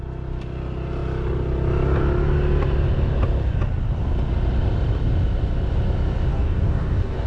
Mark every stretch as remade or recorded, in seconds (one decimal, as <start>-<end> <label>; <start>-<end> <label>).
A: 0.0-6.3 recorded; 6.3-7.3 remade